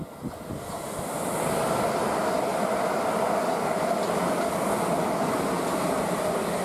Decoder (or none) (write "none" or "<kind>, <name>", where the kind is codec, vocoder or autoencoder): none